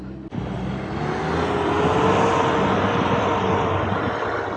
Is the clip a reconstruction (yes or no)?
no